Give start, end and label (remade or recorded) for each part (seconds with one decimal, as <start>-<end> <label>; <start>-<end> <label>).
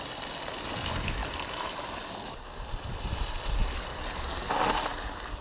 0.0-5.4 recorded